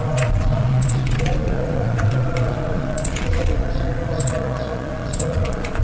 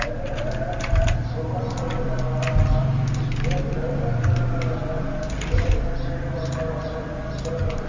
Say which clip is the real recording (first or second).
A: second